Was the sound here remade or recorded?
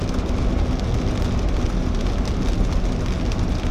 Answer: recorded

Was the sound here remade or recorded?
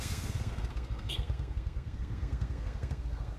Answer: remade